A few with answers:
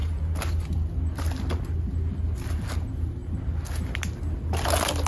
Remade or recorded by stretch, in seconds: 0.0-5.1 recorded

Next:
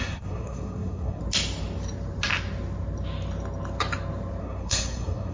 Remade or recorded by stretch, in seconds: 0.0-1.2 remade; 1.2-4.4 recorded; 4.4-5.3 remade

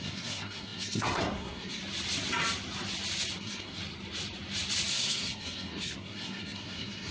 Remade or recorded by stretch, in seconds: 0.0-1.8 remade; 1.8-3.4 recorded; 3.4-3.8 remade; 3.8-4.9 recorded; 4.9-7.1 remade

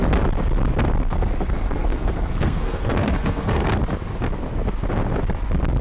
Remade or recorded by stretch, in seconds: 0.0-1.0 recorded; 1.0-3.6 remade; 3.6-5.8 recorded

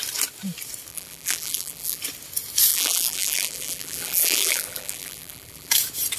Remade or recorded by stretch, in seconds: 0.0-0.9 recorded; 0.9-2.0 remade; 2.0-2.7 recorded; 2.7-5.7 remade; 5.7-6.2 recorded

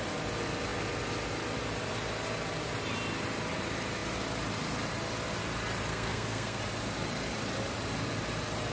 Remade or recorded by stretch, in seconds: 0.0-5.9 recorded; 5.9-6.6 remade; 6.6-8.7 recorded

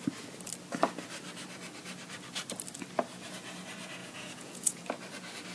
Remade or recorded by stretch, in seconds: 0.0-4.0 recorded; 4.0-4.8 remade; 4.8-5.5 recorded